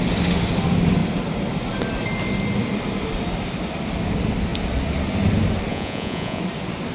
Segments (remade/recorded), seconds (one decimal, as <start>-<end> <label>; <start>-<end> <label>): 0.0-5.7 recorded; 5.7-6.4 remade; 6.4-6.9 recorded